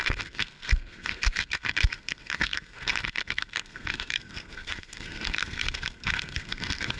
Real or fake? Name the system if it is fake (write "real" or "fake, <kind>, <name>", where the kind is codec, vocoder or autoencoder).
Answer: fake, codec, SNAC